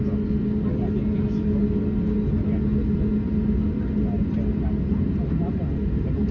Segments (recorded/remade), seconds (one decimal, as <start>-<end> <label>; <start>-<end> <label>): 0.0-6.3 recorded